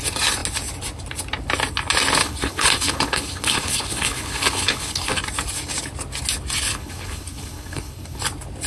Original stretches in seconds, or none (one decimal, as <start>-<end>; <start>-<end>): 0.0-2.2; 5.2-6.7; 8.2-8.7